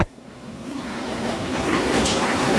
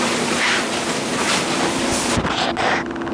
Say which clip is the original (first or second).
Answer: second